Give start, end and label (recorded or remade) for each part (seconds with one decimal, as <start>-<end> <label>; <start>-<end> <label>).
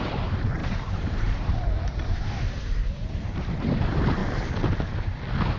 0.0-4.2 remade; 4.2-5.6 recorded